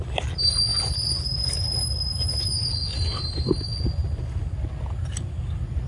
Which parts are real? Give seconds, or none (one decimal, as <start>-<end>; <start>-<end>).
0.0-5.9